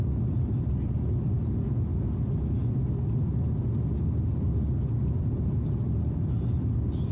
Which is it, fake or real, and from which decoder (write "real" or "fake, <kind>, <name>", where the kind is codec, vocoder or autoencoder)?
real